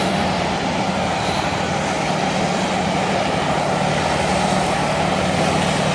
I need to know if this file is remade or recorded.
recorded